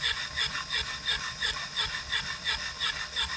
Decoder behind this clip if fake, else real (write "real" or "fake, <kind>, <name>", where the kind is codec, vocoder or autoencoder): real